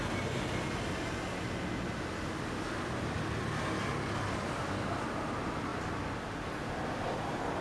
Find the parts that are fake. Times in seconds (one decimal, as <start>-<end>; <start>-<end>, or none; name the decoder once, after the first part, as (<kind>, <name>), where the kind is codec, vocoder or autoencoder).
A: none